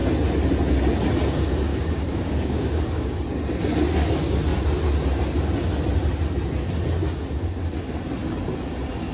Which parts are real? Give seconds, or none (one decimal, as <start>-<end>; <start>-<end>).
0.0-1.7; 3.2-9.1